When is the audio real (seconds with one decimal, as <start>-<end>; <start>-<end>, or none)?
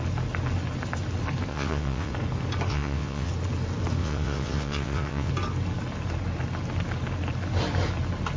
0.0-1.5; 2.1-2.7; 3.3-4.0; 5.3-8.4